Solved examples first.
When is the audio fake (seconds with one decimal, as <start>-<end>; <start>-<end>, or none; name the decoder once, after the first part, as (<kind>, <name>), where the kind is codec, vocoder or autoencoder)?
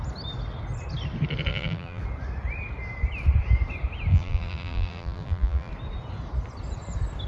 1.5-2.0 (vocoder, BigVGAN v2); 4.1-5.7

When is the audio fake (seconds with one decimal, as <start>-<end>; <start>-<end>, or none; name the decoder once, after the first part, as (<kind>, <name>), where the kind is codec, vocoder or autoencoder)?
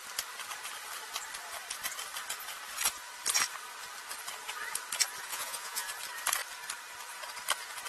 5.3-5.9 (vocoder, Vocos)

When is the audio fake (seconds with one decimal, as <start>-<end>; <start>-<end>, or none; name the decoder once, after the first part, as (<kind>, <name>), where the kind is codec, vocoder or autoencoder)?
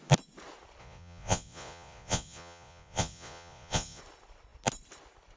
0.8-4.0 (vocoder, Vocos)